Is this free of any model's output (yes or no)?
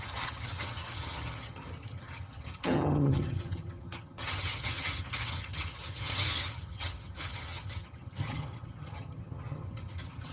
no